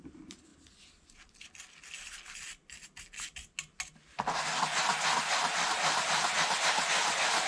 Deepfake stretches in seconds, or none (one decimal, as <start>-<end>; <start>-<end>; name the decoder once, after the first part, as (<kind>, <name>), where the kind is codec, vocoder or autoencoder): none